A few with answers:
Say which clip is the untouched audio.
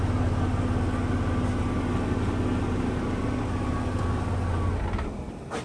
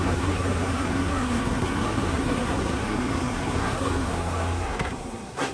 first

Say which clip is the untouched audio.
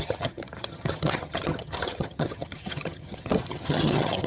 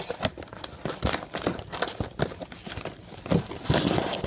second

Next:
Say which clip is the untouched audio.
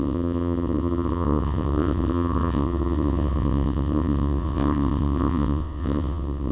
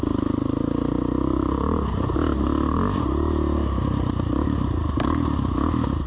second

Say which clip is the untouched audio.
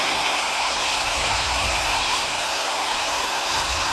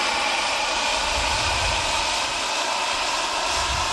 second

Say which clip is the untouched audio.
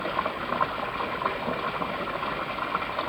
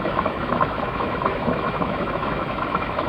first